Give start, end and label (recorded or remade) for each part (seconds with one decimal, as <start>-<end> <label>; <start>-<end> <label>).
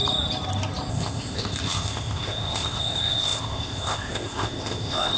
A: 0.0-0.9 recorded; 0.9-5.2 remade